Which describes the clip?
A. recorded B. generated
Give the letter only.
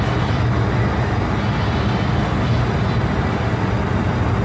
A